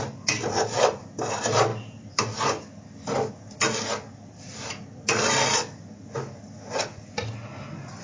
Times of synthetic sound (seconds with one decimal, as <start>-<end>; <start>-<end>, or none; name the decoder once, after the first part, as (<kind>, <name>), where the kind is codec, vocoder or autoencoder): none